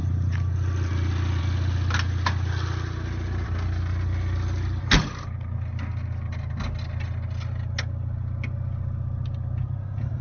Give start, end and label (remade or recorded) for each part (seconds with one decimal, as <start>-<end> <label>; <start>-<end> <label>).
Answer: 0.0-10.2 recorded